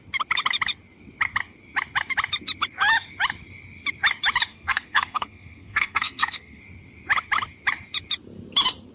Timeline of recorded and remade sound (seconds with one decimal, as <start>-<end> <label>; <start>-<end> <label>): 0.0-4.5 recorded; 4.5-6.6 remade; 6.6-8.9 recorded